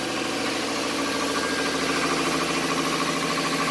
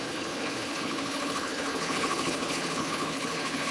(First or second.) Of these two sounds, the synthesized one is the second